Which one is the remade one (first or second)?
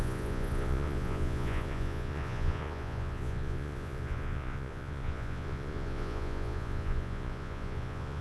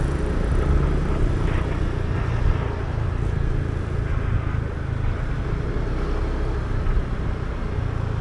first